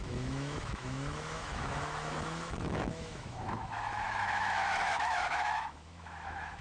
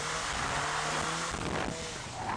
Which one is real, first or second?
second